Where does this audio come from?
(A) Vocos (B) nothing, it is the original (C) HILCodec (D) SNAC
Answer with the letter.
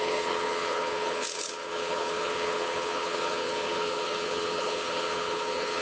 C